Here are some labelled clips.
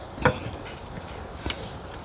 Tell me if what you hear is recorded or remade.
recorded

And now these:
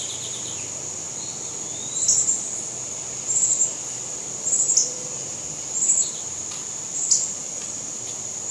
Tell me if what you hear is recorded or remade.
recorded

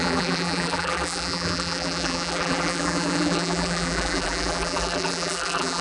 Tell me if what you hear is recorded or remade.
remade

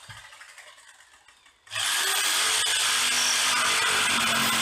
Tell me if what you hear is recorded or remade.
recorded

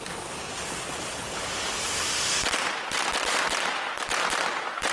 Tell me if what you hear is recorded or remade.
remade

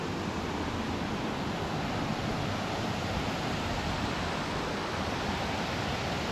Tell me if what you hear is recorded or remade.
recorded